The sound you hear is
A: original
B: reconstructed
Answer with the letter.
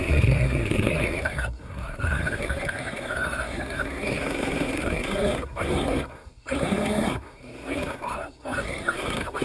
B